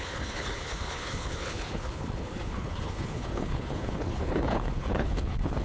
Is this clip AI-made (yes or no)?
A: yes